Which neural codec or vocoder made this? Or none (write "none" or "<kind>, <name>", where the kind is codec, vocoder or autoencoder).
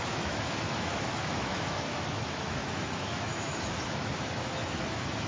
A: autoencoder, DAC-VAE